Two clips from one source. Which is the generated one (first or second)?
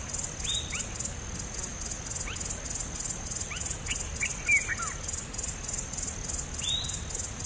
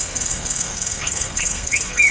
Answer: second